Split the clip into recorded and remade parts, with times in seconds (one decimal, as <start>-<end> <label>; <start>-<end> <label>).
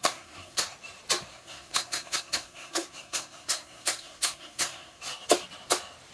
0.0-0.6 remade; 0.6-1.3 recorded; 1.3-5.0 remade; 5.0-6.1 recorded